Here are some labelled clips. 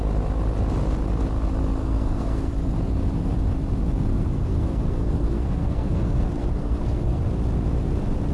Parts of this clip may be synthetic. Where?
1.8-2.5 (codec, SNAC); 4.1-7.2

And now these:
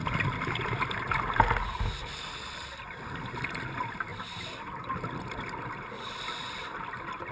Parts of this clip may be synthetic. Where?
none

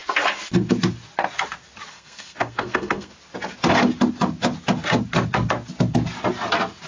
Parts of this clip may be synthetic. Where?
1.9-3.1 (codec, SNAC)